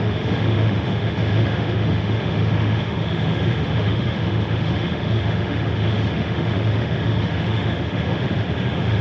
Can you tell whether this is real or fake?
fake